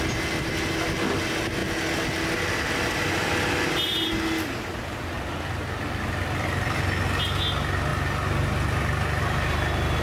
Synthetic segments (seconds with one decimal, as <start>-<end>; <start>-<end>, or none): none